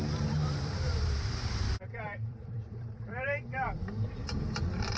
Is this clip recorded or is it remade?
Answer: remade